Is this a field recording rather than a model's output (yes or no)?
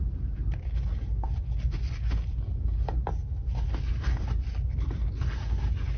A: yes